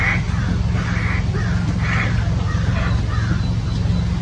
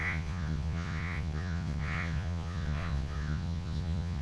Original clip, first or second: first